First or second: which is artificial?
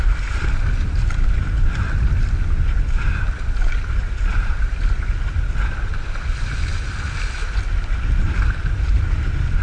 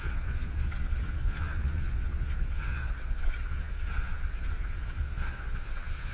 second